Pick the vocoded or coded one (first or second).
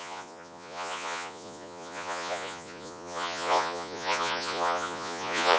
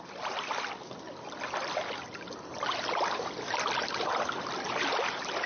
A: first